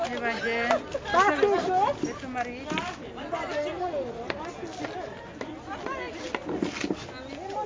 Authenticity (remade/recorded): recorded